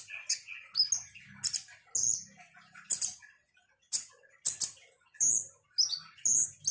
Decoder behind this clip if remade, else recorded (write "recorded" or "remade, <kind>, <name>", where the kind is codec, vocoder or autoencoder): recorded